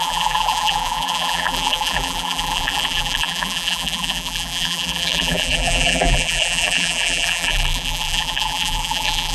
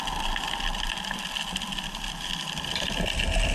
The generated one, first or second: first